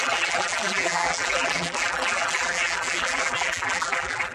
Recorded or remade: remade